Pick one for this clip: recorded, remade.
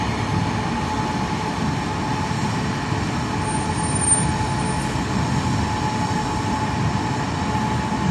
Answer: recorded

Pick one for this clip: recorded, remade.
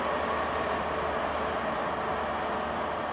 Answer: recorded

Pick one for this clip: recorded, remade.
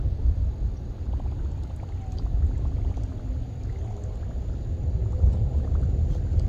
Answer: recorded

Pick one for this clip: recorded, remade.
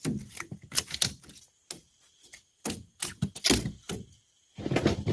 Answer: recorded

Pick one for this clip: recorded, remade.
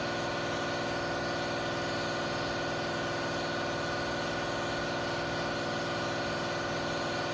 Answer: recorded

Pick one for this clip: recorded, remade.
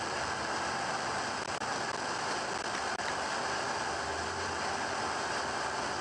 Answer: recorded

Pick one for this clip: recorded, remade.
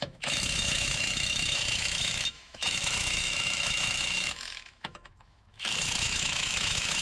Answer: remade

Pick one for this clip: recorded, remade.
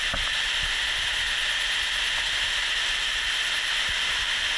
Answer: recorded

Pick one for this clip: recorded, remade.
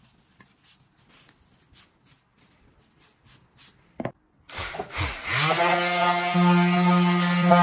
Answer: recorded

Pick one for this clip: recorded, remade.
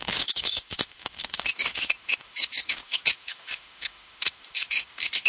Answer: remade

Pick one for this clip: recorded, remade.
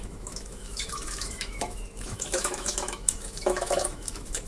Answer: remade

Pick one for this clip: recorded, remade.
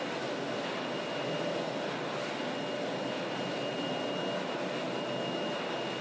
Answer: recorded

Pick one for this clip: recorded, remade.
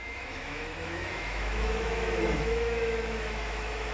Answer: remade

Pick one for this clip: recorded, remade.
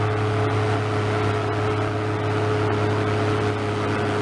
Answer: recorded